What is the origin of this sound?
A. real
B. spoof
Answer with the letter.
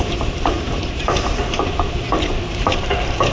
B